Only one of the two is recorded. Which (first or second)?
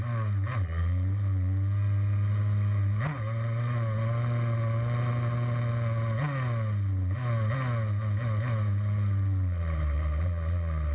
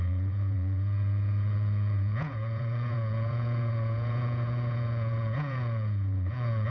first